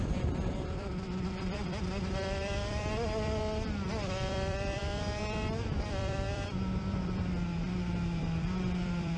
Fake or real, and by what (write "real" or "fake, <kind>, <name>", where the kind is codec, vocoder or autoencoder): fake, vocoder, BigVGAN v2